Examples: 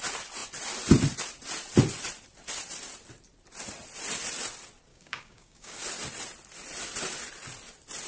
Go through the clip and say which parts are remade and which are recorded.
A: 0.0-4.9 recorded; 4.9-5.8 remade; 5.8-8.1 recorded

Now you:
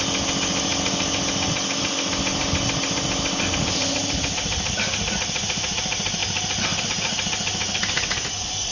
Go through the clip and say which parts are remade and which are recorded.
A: 0.0-8.7 recorded

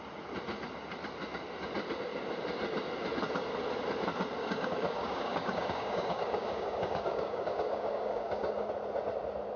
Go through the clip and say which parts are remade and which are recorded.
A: 0.0-4.4 recorded; 4.4-8.7 remade; 8.7-9.6 recorded

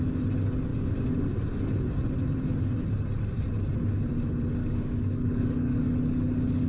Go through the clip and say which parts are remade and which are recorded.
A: 0.0-4.6 recorded; 4.6-5.8 remade; 5.8-6.7 recorded

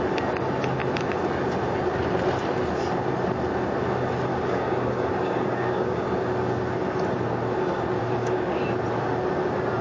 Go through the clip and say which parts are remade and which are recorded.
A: 0.0-4.3 recorded; 4.3-6.0 remade; 6.0-8.0 recorded; 8.0-8.6 remade; 8.6-9.8 recorded

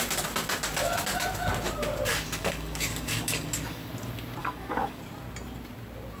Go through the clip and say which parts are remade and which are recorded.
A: 0.0-2.1 recorded; 2.1-3.9 remade; 3.9-4.4 recorded; 4.4-5.0 remade; 5.0-6.2 recorded

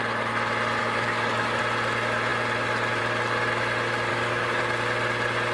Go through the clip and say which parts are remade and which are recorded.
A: 0.0-0.8 recorded; 0.8-1.6 remade; 1.6-4.1 recorded; 4.1-4.6 remade; 4.6-5.5 recorded